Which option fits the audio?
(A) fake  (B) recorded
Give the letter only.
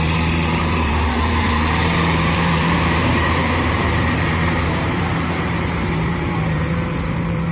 A